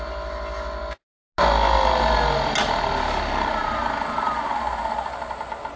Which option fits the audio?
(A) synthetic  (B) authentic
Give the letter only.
B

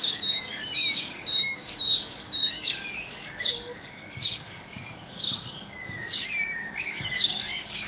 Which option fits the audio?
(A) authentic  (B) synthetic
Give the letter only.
B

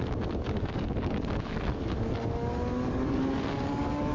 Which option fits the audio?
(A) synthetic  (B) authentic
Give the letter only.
A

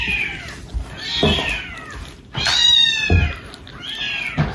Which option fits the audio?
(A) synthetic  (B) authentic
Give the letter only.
B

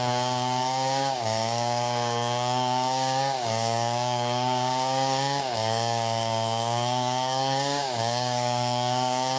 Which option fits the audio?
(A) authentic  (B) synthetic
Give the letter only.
B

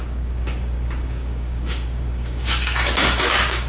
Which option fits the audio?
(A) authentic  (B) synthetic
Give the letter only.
B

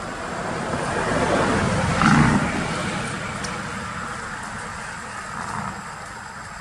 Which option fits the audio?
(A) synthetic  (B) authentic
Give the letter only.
B